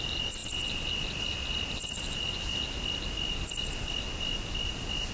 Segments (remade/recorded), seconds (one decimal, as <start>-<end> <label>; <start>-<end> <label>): 0.0-5.1 recorded